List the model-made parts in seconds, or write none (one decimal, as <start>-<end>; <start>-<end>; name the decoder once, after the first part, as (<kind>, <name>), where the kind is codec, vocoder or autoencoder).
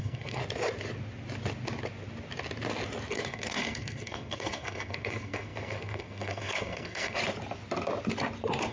0.0-0.4 (codec, SNAC); 3.1-7.2